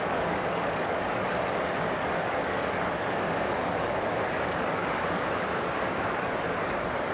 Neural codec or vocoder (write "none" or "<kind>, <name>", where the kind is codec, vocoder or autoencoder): codec, DAC